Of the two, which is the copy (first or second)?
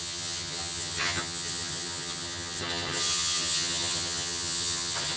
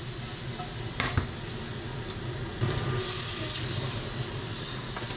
first